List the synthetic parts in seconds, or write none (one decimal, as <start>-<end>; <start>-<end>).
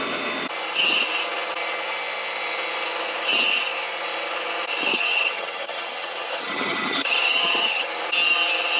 4.9-7.9